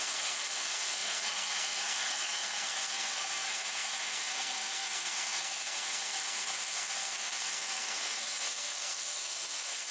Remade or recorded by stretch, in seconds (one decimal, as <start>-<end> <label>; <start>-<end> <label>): 0.0-9.9 remade